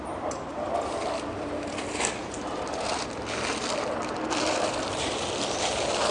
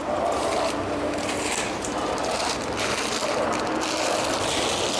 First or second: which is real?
second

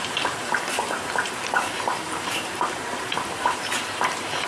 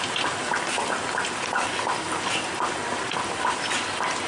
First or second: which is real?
second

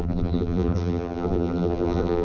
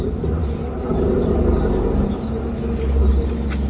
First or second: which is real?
second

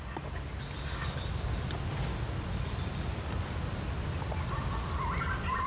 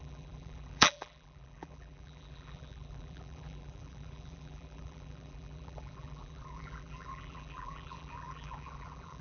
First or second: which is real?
first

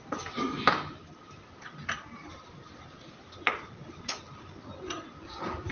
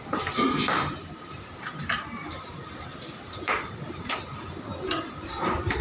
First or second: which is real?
first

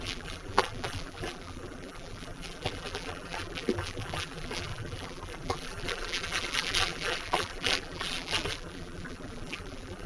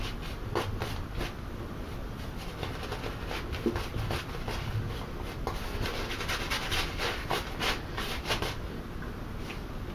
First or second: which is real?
second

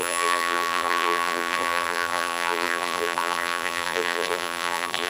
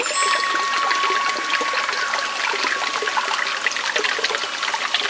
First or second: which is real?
second